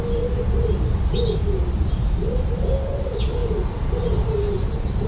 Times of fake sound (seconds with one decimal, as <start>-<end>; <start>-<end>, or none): 1.6-2.3; 3.4-5.1